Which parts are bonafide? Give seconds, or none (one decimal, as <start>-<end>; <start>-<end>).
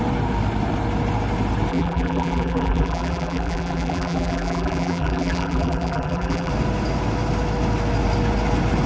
0.0-1.7; 6.5-8.9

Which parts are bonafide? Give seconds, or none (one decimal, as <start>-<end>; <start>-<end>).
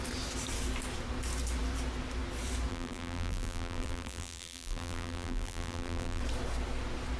0.0-2.7; 6.2-7.2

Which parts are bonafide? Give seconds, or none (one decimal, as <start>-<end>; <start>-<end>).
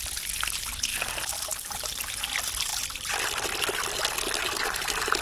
0.0-5.2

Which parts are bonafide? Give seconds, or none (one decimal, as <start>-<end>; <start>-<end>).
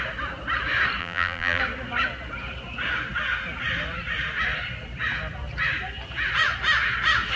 0.0-1.0; 1.6-7.4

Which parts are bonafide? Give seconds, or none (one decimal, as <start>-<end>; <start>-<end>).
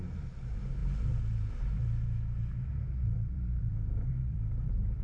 none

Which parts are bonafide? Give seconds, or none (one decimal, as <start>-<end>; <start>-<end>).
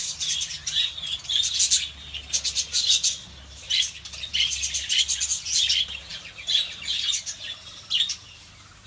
0.0-8.9